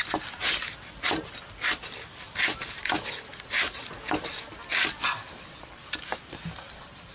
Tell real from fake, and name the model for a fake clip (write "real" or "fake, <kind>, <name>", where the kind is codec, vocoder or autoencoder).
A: real